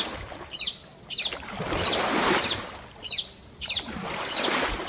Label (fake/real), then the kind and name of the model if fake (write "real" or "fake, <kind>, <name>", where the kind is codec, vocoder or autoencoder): real